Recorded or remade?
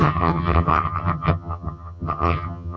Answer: remade